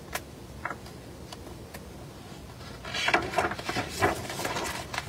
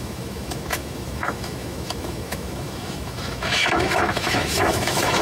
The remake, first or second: second